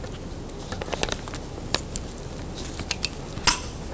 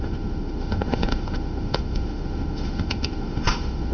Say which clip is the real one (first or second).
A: first